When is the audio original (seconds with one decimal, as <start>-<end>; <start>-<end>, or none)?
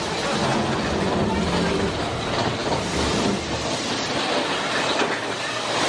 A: 0.0-0.5; 1.1-5.9